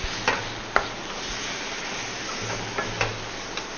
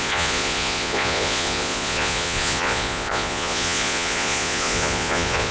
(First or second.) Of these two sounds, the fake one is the second